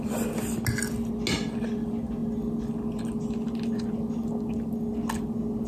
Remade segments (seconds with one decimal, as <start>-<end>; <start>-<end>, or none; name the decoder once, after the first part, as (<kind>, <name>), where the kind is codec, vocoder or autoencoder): none

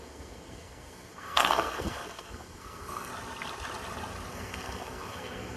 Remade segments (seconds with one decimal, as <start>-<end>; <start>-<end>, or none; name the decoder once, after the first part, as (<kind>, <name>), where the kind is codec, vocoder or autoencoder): 0.0-3.1 (codec, SNAC); 4.3-5.6

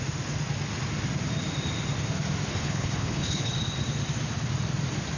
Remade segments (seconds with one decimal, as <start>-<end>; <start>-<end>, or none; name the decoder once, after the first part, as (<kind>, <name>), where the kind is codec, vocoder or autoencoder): 2.5-3.5 (codec, HILCodec)

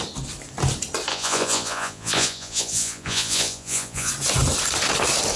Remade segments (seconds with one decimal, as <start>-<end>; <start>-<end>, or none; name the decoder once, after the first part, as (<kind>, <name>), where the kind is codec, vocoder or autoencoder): 1.1-4.1 (vocoder, Vocos)

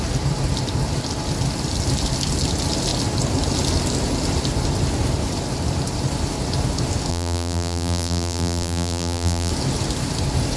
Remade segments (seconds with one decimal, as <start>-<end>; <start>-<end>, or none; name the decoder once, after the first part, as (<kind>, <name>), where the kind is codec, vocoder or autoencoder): 7.1-9.5 (vocoder, BigVGAN v2)

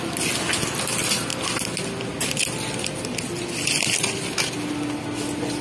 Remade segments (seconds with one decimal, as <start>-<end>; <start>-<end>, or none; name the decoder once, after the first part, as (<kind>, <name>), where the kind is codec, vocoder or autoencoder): none